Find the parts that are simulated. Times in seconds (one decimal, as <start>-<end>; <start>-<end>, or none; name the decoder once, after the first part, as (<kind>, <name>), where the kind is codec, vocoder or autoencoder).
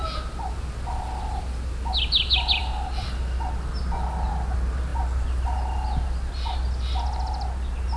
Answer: none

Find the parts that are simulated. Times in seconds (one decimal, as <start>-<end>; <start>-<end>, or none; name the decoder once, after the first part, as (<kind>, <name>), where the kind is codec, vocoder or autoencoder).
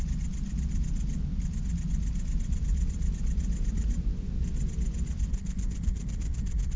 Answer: 5.3-6.8 (codec, HILCodec)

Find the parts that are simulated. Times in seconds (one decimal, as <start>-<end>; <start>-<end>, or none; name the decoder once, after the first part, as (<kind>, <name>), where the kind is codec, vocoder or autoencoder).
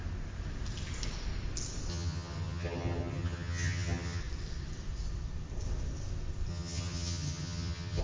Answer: 1.9-4.2 (vocoder, HiFi-GAN); 6.5-8.0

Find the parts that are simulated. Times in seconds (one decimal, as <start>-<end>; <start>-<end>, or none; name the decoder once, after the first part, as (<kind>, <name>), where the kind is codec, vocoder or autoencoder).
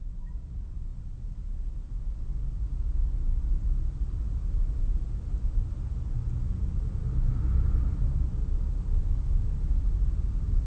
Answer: none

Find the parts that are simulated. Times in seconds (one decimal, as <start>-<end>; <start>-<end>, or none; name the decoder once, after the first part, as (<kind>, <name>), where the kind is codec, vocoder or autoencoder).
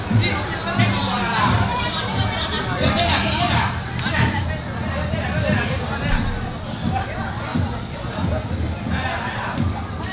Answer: 1.0-4.4 (vocoder, BigVGAN v2); 7.5-8.0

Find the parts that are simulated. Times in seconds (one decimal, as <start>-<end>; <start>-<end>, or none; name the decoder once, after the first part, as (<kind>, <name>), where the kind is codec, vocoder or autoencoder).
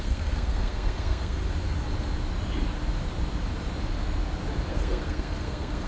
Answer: 0.0-1.4 (codec, SNAC); 4.7-5.9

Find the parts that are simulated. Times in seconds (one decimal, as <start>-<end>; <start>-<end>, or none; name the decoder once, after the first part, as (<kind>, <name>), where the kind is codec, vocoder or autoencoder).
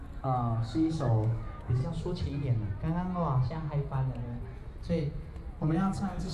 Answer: 0.0-1.8 (codec, DAC); 5.6-6.3